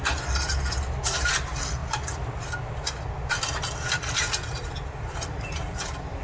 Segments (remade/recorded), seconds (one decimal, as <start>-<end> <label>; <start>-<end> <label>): 0.0-6.2 recorded